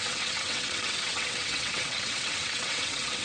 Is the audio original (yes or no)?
no